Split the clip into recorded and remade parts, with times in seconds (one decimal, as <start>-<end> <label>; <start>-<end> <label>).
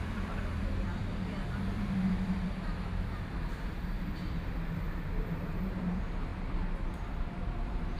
0.0-6.3 remade; 6.3-6.9 recorded; 6.9-8.0 remade